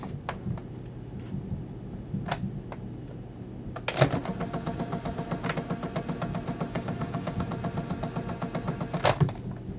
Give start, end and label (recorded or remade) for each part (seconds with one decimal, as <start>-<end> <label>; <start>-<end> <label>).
0.0-6.7 recorded; 6.7-7.5 remade; 7.5-9.8 recorded